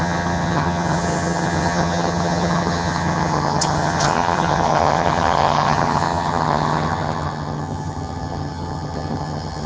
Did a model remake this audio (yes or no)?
yes